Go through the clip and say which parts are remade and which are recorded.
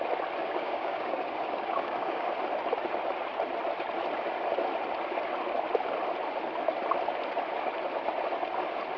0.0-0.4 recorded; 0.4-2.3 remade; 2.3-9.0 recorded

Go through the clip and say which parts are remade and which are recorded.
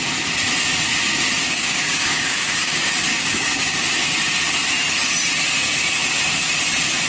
0.0-1.4 recorded; 1.4-3.8 remade; 3.8-7.1 recorded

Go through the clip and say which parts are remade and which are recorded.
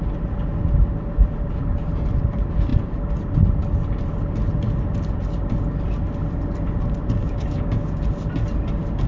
0.0-7.2 recorded; 7.2-8.0 remade; 8.0-9.1 recorded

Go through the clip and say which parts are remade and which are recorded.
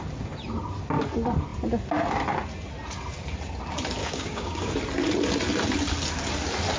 0.0-4.0 recorded; 4.0-4.7 remade; 4.7-6.8 recorded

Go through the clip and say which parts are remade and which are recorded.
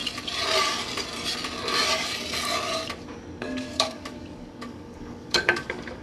0.0-3.4 recorded; 3.4-6.0 remade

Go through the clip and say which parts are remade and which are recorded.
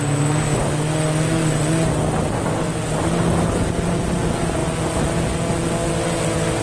0.0-6.6 recorded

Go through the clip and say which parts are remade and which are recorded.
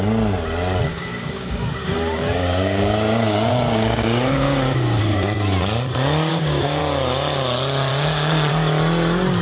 0.0-0.9 recorded; 0.9-5.0 remade; 5.0-6.3 recorded; 6.3-6.8 remade; 6.8-7.9 recorded; 7.9-8.5 remade; 8.5-9.4 recorded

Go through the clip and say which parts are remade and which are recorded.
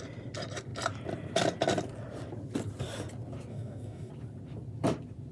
0.0-3.5 recorded; 3.5-4.1 remade; 4.1-5.3 recorded